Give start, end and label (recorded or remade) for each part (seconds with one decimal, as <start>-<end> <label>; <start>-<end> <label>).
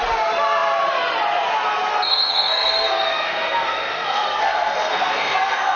0.0-1.9 recorded; 1.9-5.8 remade